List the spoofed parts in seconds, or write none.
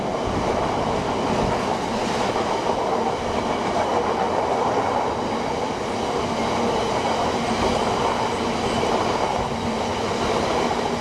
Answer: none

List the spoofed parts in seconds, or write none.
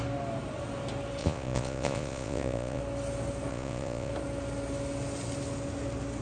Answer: 1.2-2.8 (vocoder, Vocos); 3.5-4.1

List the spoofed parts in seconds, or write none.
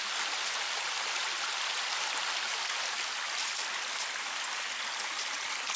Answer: 1.9-4.2 (vocoder, BigVGAN v2)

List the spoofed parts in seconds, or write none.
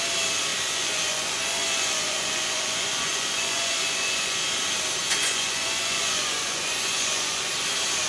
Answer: 0.5-4.4 (vocoder, Vocos); 5.0-7.5